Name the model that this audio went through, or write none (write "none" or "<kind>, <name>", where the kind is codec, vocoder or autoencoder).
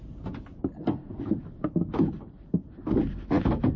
none